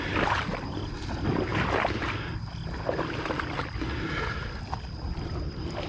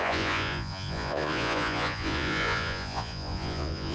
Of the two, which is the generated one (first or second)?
second